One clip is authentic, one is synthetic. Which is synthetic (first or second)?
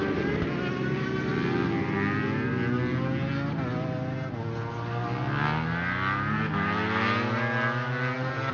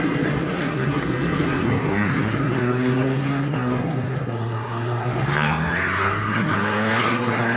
second